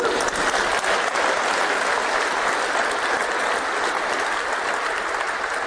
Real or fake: real